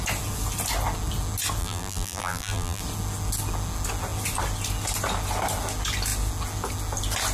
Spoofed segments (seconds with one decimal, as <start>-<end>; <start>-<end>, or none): 1.6-2.8